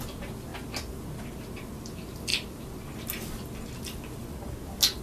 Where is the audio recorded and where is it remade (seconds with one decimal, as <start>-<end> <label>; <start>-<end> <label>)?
0.0-5.0 recorded